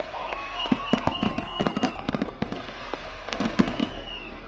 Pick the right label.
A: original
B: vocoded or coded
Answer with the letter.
B